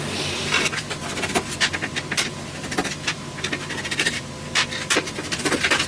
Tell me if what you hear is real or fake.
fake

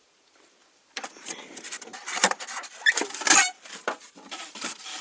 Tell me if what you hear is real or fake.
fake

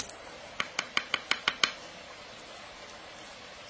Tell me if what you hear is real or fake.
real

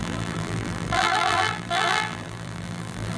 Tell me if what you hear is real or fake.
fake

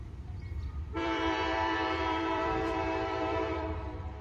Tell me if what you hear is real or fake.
fake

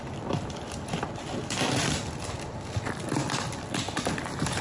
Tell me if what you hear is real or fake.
fake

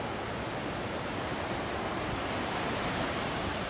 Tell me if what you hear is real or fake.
fake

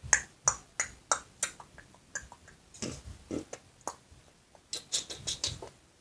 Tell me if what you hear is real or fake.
real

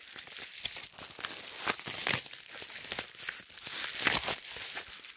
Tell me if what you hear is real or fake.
real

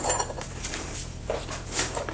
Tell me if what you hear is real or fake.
fake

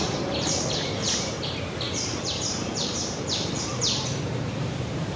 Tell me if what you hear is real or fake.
fake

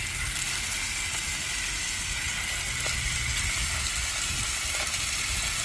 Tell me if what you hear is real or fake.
real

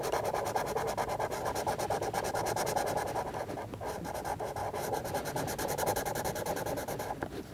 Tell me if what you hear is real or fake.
real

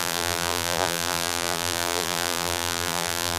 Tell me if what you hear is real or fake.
fake